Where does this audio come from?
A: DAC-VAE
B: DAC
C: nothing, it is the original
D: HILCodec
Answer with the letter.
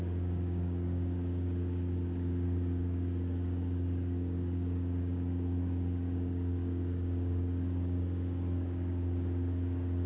B